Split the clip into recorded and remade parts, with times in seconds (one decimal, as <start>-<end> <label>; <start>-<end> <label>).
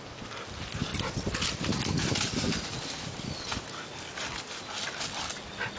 0.0-5.8 recorded